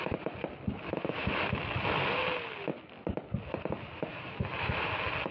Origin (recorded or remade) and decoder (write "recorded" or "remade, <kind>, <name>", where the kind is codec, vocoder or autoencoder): recorded